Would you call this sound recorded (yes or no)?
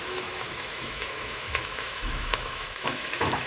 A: no